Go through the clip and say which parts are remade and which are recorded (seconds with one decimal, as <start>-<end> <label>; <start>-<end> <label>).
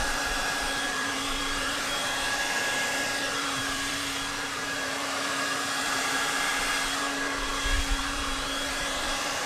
0.0-6.5 remade; 6.5-7.0 recorded; 7.0-7.5 remade; 7.5-8.0 recorded; 8.0-9.5 remade